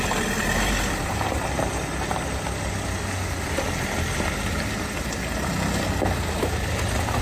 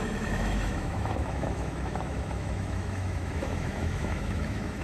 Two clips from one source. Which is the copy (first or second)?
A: second